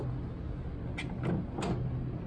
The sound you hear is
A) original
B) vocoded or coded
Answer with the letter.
A